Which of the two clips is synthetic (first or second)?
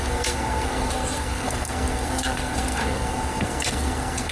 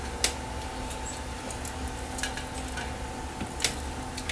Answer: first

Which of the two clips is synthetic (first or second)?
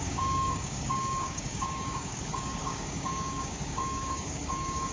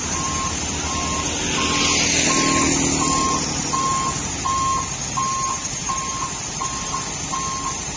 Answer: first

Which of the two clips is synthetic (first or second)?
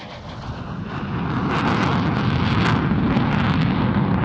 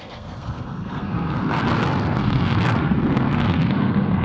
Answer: second